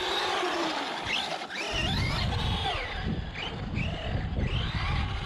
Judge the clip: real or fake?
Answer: real